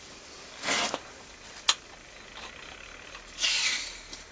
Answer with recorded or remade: recorded